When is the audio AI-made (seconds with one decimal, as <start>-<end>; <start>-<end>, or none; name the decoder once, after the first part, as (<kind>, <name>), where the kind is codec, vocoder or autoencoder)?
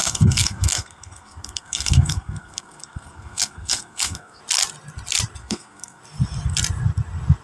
0.0-4.4 (codec, SNAC); 5.4-6.0